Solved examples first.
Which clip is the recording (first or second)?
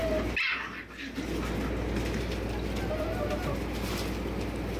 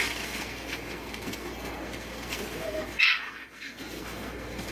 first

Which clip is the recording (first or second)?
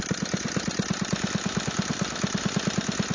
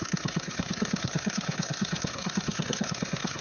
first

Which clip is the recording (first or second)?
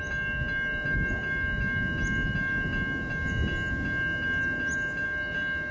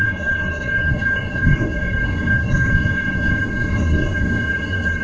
first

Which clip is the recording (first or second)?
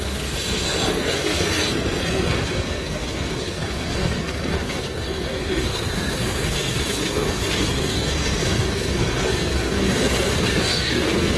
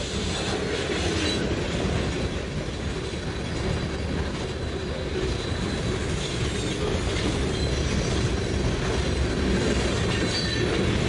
second